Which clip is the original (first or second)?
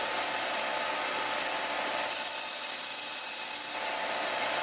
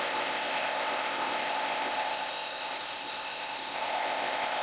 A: first